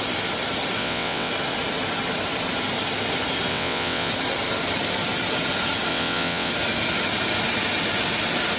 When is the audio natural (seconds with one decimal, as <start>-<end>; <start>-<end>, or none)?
0.0-0.8; 1.3-3.5; 4.1-5.9; 6.5-8.6

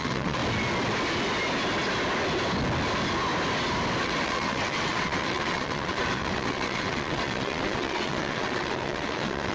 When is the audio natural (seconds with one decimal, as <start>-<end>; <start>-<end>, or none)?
0.4-4.0

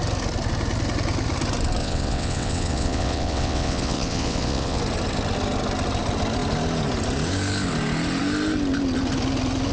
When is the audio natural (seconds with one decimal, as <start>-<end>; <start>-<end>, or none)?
0.0-1.8; 4.8-9.7

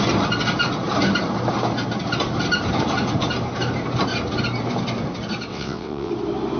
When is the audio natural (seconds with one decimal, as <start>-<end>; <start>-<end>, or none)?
0.0-5.5; 6.1-6.6

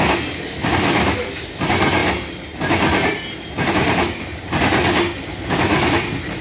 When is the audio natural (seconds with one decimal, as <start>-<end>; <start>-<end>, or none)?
0.0-6.4